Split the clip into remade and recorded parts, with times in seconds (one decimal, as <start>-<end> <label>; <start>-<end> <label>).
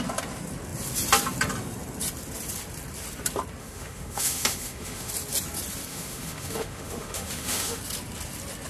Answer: 0.0-3.6 recorded; 3.6-5.1 remade; 5.1-5.9 recorded; 5.9-7.8 remade; 7.8-8.7 recorded